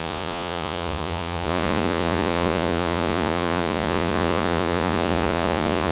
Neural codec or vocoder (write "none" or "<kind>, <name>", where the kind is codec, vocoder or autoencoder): vocoder, Vocos